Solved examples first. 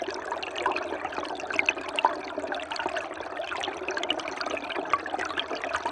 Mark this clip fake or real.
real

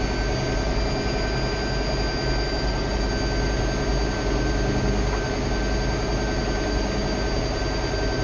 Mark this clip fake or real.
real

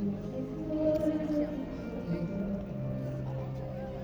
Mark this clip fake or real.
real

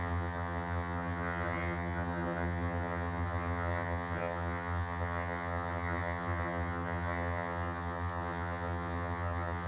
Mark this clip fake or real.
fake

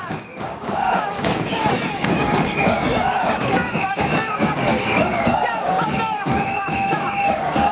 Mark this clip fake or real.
fake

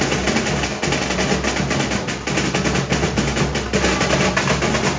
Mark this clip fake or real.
real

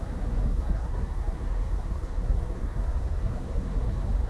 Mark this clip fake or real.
fake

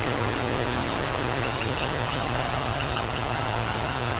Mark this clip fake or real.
fake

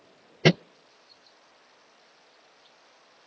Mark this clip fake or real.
real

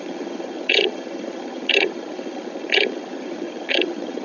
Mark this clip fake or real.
fake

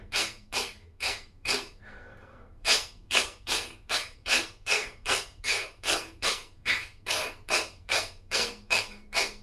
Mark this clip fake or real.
fake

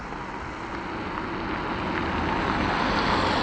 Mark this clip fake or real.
real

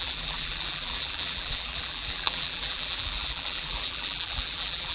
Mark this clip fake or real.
fake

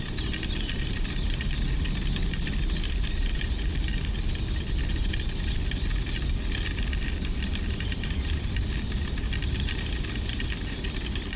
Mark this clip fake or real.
real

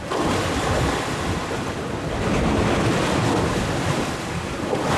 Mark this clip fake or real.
real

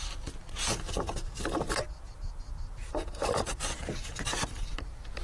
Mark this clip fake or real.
real